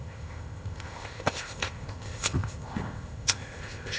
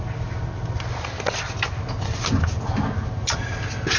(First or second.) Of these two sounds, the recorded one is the second